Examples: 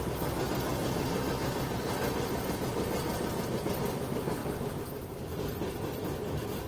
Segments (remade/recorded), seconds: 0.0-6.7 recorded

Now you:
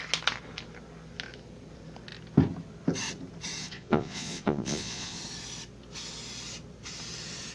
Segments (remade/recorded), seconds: 0.0-3.6 recorded; 3.6-5.2 remade; 5.2-7.5 recorded

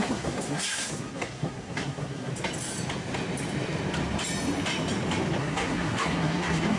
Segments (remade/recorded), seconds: 0.0-2.3 remade; 2.3-5.4 recorded; 5.4-6.8 remade

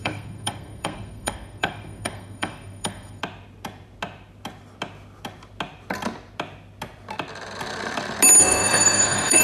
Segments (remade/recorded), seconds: 0.0-3.2 remade; 3.2-8.4 recorded; 8.4-9.4 remade

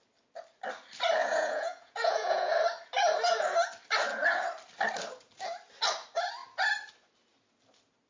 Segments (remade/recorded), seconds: 0.0-1.2 recorded; 1.2-2.5 remade; 2.5-8.1 recorded

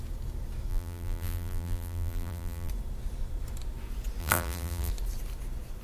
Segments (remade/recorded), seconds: 0.0-0.7 recorded; 0.7-2.7 remade; 2.7-4.2 recorded; 4.2-4.9 remade; 4.9-5.8 recorded

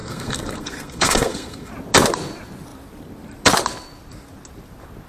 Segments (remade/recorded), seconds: 0.0-1.7 remade; 1.7-5.1 recorded